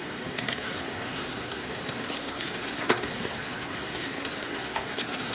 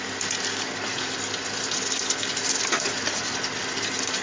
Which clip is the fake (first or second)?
first